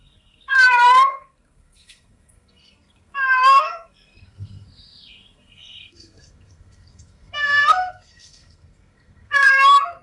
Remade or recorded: remade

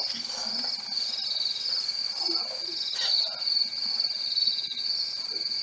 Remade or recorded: recorded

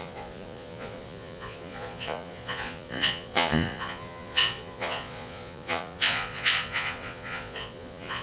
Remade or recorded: remade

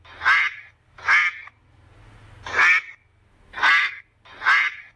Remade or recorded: recorded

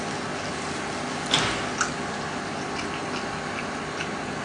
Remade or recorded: recorded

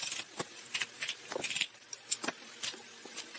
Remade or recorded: recorded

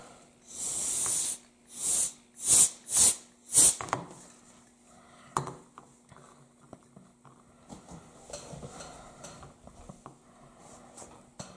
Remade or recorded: recorded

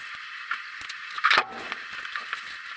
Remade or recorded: recorded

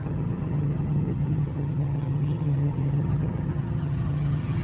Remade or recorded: remade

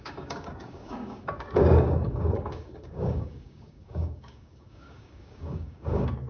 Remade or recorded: remade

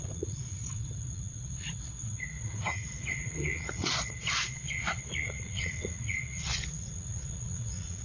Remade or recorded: remade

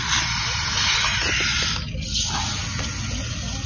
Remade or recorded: recorded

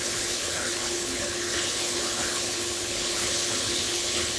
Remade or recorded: remade